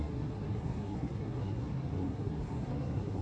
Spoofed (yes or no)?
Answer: yes